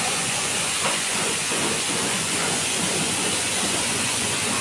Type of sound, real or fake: fake